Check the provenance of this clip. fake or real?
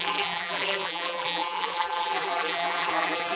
fake